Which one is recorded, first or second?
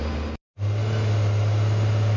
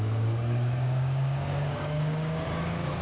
first